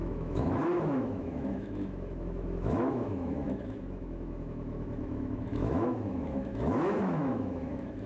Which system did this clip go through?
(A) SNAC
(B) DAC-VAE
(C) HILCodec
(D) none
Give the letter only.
B